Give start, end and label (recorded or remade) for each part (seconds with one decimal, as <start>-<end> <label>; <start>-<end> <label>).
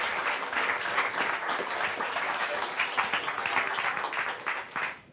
0.0-1.9 recorded; 1.9-2.6 remade; 2.6-5.1 recorded